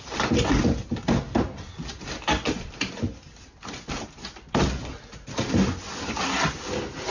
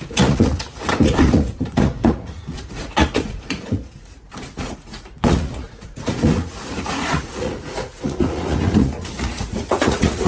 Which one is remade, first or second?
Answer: second